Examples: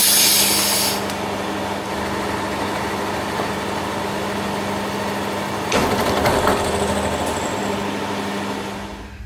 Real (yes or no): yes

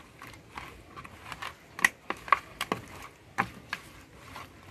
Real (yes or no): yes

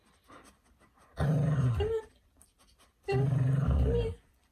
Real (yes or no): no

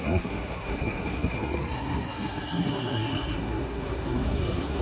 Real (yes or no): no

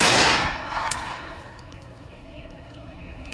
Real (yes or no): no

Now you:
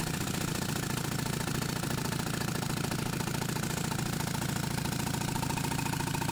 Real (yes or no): yes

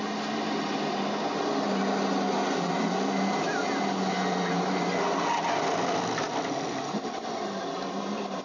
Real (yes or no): yes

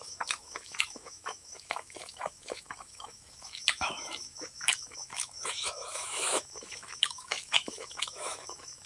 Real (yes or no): no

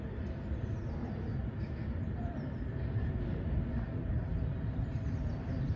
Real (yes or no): yes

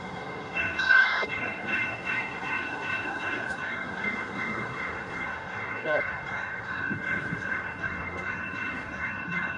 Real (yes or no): no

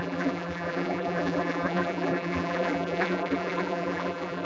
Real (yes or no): no